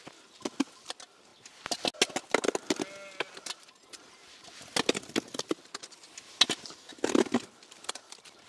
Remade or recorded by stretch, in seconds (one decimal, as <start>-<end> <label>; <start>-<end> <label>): 0.0-8.5 recorded